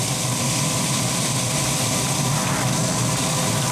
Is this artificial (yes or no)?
no